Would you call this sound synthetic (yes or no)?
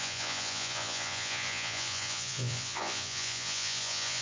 yes